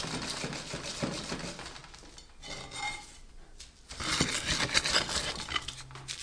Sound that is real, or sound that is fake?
real